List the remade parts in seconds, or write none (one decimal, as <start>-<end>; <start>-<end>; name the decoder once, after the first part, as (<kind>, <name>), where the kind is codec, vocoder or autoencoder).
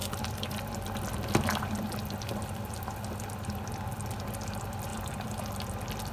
0.0-0.6 (vocoder, BigVGAN v2); 4.9-5.5